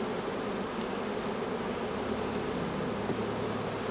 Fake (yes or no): no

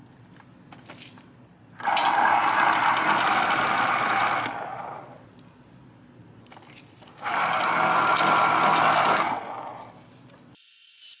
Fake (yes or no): no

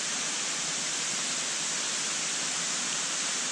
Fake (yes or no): no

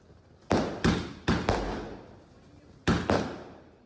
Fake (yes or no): no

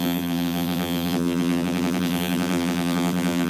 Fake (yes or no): yes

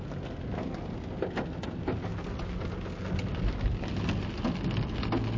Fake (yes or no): no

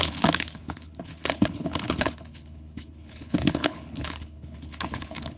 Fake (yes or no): yes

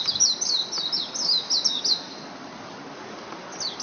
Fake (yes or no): no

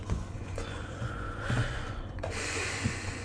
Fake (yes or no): yes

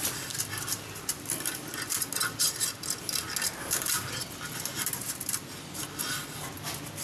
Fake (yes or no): no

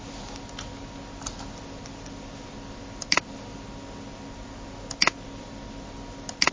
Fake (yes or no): no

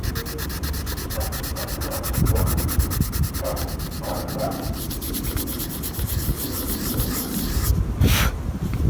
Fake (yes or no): no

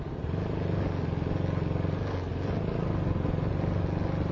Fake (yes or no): no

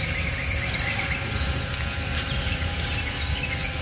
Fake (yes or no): no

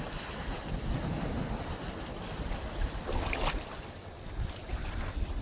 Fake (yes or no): no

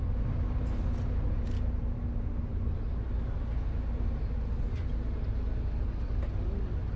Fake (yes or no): no